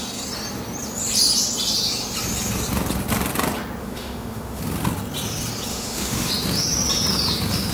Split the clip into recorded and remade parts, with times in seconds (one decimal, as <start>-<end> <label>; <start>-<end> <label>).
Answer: 0.0-3.8 recorded; 3.8-4.6 remade; 4.6-5.7 recorded; 5.7-6.3 remade; 6.3-7.7 recorded